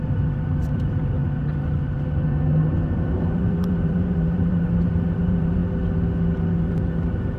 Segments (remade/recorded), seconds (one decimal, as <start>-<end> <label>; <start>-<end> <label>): 0.0-1.2 remade; 1.2-2.9 recorded; 2.9-5.6 remade; 5.6-6.6 recorded; 6.6-7.4 remade